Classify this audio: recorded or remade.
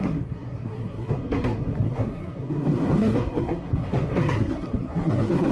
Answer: remade